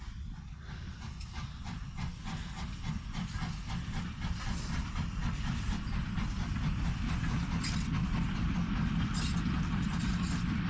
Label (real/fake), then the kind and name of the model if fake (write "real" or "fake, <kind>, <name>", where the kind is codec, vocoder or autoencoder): real